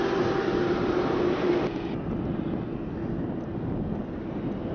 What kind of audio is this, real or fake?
real